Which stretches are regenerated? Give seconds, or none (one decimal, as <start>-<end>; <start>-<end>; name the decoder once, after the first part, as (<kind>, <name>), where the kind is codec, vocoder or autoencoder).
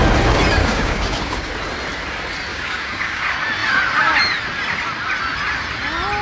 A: 0.6-1.5 (codec, DAC); 2.5-3.2